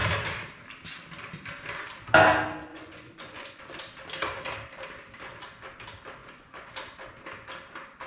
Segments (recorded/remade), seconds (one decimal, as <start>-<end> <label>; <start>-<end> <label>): 0.0-2.7 recorded; 2.7-3.6 remade; 3.6-6.2 recorded; 6.2-6.7 remade; 6.7-8.1 recorded